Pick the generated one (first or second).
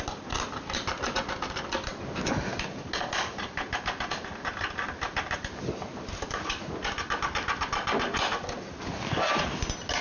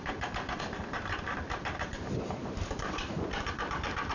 second